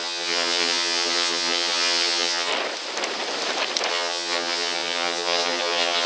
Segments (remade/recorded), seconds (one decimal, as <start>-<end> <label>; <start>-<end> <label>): 0.0-2.5 remade; 2.5-3.9 recorded; 3.9-6.1 remade